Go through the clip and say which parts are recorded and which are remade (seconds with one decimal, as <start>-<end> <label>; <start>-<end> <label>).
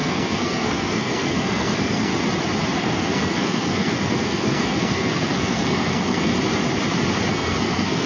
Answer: 0.0-2.1 remade; 2.1-2.8 recorded; 2.8-6.3 remade; 6.3-7.3 recorded; 7.3-8.1 remade